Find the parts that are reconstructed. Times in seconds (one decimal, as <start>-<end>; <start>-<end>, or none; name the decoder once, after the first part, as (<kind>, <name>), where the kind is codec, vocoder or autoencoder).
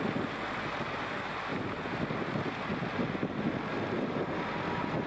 none